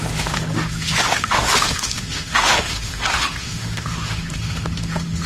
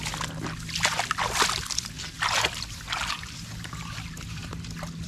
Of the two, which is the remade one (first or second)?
first